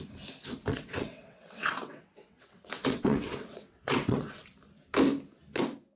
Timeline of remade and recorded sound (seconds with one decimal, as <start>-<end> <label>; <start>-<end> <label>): 0.0-0.7 recorded; 0.7-4.3 remade; 4.3-6.0 recorded